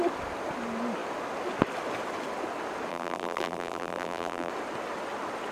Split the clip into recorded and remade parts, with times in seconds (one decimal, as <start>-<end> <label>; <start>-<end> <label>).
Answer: 0.0-2.9 recorded; 2.9-4.5 remade; 4.5-5.5 recorded